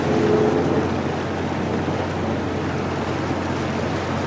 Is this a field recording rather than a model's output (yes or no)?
yes